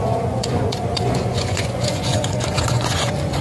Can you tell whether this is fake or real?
fake